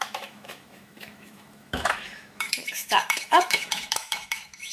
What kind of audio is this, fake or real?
fake